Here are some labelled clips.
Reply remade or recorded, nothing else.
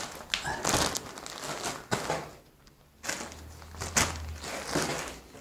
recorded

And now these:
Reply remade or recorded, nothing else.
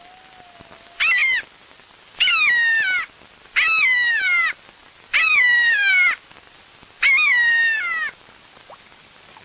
recorded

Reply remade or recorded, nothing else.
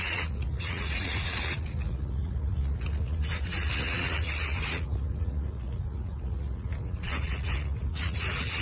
remade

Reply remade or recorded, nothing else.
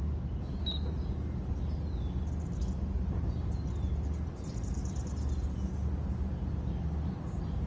recorded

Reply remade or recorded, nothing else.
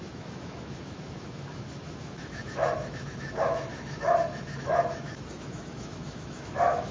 remade